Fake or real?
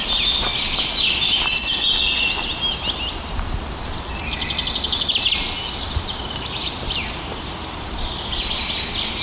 real